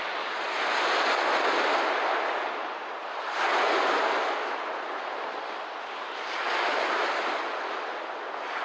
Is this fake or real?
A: real